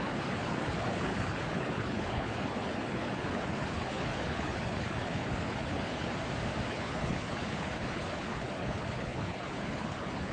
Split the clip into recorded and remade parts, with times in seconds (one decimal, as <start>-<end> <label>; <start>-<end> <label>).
0.0-6.2 remade; 6.2-6.7 recorded; 6.7-10.3 remade